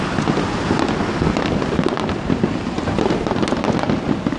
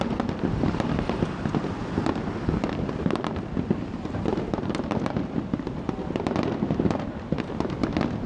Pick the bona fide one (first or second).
first